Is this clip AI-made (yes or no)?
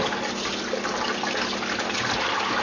no